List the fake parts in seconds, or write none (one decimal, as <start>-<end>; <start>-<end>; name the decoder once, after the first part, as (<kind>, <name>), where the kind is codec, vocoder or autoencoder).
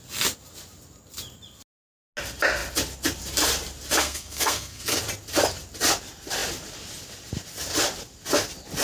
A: 4.0-5.0 (codec, SNAC)